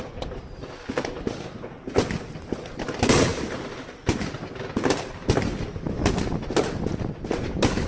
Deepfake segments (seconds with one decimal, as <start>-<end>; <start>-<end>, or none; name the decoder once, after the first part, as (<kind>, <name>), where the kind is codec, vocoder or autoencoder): none